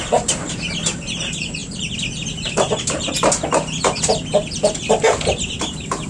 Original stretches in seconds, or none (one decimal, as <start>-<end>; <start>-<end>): 0.0-1.6; 3.1-6.1